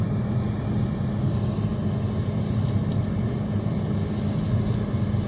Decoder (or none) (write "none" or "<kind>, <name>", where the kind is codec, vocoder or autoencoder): none